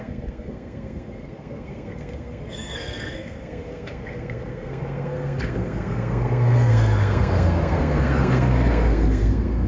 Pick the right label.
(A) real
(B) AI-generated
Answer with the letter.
B